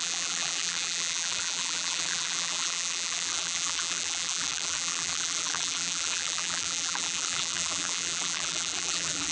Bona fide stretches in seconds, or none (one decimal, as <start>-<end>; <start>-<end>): none